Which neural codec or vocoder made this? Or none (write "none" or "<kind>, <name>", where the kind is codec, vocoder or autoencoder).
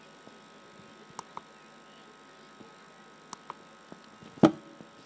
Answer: none